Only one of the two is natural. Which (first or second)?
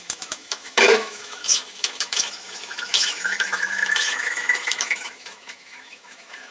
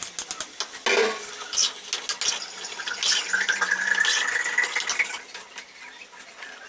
second